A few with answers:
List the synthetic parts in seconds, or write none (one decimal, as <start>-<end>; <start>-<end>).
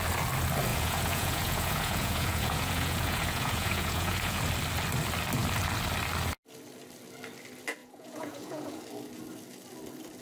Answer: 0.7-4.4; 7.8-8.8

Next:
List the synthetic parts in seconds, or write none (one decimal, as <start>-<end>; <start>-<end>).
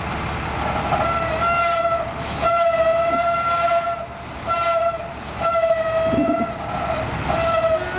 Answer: none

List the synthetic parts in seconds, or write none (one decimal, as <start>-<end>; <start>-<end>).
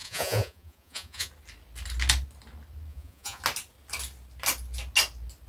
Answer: 0.0-1.3; 2.9-3.4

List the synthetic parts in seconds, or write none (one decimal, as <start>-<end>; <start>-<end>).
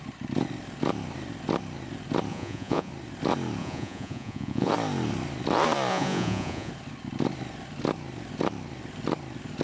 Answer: 2.3-2.9; 3.6-4.7; 5.9-6.7